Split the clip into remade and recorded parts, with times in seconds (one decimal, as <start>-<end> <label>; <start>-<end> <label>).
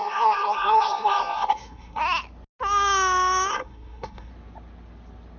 0.0-2.0 remade; 2.0-3.5 recorded; 3.5-4.3 remade; 4.3-5.4 recorded